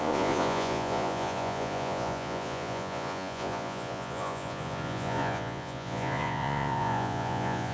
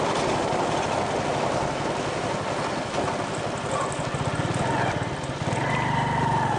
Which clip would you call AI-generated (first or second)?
first